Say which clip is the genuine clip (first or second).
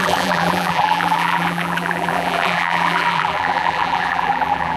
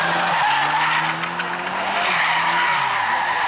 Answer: second